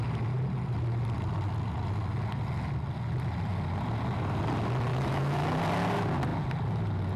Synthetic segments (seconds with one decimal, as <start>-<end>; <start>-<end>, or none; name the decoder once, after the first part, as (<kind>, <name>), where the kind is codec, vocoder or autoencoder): 4.9-5.6 (autoencoder, DAC-VAE)